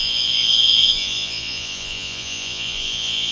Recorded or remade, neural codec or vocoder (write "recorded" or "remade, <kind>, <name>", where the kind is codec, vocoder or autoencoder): remade, vocoder, Vocos